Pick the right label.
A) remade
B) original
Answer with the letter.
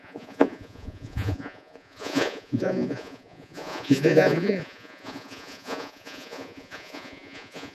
A